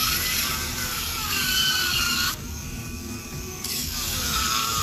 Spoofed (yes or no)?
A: yes